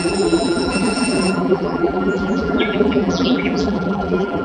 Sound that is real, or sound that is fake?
fake